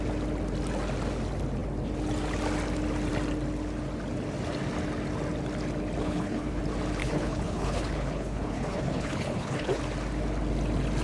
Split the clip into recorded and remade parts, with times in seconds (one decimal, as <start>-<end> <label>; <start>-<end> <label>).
0.0-6.0 recorded; 6.0-6.6 remade; 6.6-7.0 recorded; 7.0-9.8 remade; 9.8-11.0 recorded